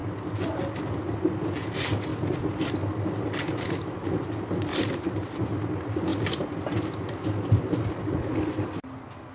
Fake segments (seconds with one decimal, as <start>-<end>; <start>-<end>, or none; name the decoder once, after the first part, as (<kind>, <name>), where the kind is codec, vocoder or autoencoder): 4.7-5.4 (vocoder, BigVGAN v2)